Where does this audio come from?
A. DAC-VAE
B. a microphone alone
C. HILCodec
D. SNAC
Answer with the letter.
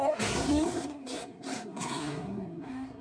D